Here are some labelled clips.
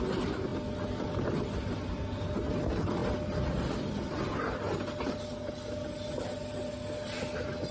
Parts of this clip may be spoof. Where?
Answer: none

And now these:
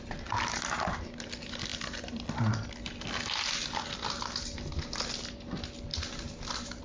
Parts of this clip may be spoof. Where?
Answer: 1.7-2.4 (vocoder, BigVGAN v2); 5.9-6.8

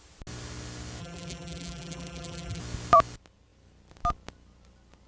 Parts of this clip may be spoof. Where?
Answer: 1.0-2.6 (vocoder, BigVGAN v2)

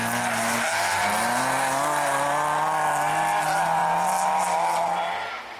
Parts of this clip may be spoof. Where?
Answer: none

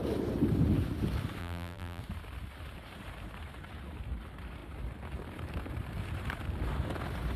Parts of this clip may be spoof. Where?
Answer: 1.4-2.0 (vocoder, BigVGAN v2)

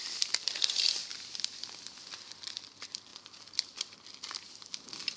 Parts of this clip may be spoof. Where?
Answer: 0.0-5.2 (vocoder, BigVGAN v2)